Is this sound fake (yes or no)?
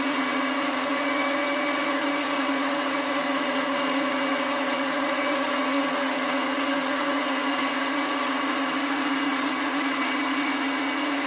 yes